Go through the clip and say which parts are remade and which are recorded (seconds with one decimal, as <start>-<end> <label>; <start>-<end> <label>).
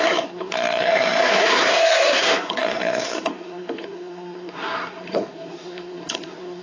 0.0-6.6 remade